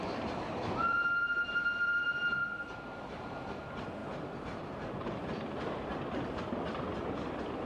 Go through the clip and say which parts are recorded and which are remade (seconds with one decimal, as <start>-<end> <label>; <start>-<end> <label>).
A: 0.0-4.0 recorded; 4.0-5.2 remade; 5.2-7.7 recorded